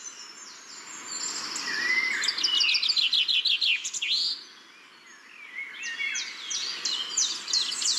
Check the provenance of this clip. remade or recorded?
recorded